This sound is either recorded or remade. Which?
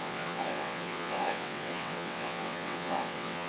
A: remade